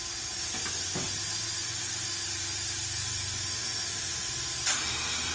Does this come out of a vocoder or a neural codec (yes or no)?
yes